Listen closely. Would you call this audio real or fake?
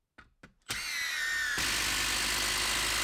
real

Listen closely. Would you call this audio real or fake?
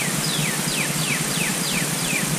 fake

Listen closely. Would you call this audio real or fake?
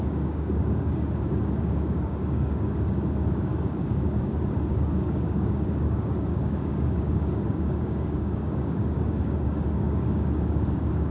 fake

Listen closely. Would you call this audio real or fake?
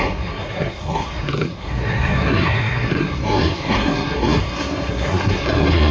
fake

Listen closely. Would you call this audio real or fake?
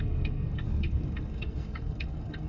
fake